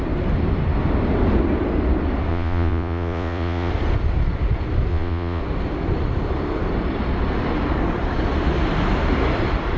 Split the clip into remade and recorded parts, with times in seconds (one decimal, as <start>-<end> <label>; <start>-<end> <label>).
0.0-2.3 recorded; 2.3-3.7 remade; 3.7-4.9 recorded; 4.9-5.4 remade; 5.4-9.8 recorded